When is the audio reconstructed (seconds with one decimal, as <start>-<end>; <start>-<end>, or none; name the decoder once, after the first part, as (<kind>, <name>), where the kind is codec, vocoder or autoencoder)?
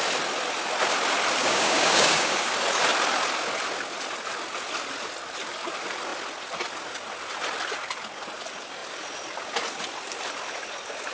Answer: 1.4-2.5 (codec, DAC)